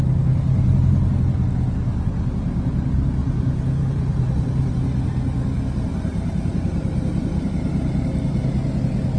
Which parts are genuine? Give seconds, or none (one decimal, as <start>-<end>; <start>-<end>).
0.0-3.2; 4.7-6.1